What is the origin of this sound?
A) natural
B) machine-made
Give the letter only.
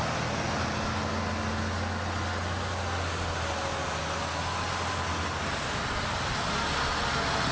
A